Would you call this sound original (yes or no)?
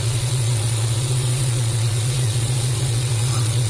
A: no